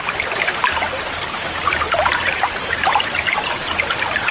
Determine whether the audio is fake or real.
fake